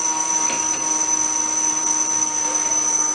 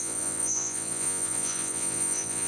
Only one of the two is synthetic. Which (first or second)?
second